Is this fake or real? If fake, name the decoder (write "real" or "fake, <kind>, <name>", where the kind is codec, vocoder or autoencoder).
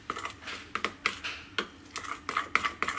real